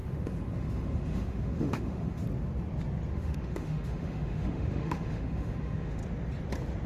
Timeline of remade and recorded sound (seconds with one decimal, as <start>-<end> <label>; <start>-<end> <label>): 0.0-2.2 remade; 2.2-3.1 recorded; 3.1-6.0 remade; 6.0-6.9 recorded